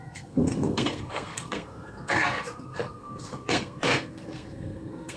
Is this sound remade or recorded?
remade